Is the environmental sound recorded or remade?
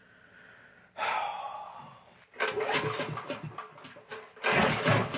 recorded